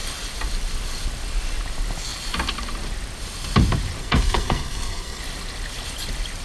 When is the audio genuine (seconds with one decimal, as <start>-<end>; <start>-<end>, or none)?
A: 0.0-4.0; 5.2-6.4